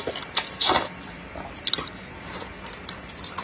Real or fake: real